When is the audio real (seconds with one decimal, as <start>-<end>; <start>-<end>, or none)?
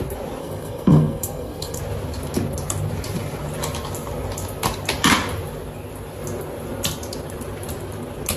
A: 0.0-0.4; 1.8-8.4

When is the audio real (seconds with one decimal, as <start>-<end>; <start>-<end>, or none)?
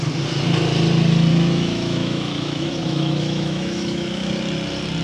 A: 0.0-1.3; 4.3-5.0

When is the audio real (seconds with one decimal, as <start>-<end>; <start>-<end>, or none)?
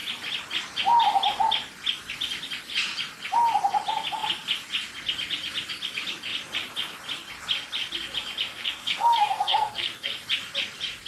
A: 0.0-8.5; 10.1-11.1